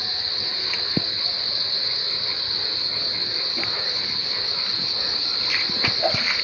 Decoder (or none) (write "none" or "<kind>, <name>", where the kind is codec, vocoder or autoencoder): none